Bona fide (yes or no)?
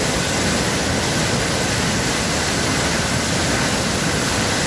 yes